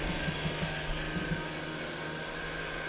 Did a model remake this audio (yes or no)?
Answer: no